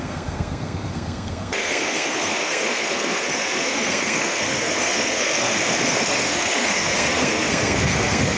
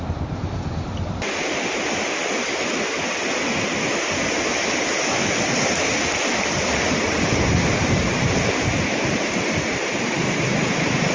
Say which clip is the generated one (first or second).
first